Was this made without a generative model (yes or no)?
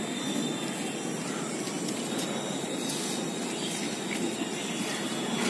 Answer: yes